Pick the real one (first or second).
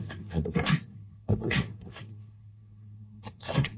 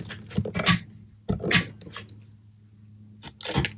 second